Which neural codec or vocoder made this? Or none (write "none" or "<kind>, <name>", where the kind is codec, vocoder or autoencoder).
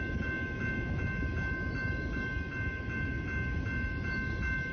none